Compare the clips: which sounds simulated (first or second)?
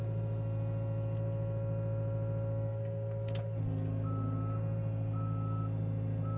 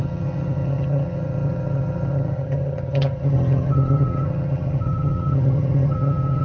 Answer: second